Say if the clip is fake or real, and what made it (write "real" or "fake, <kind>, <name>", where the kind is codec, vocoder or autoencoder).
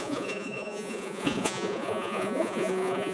fake, vocoder, Vocos